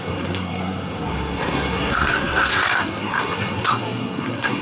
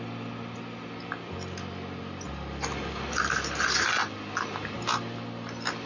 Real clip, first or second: second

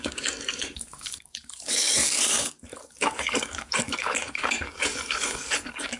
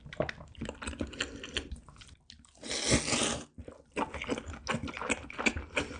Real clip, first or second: second